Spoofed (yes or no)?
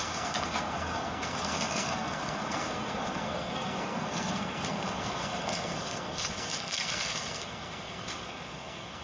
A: yes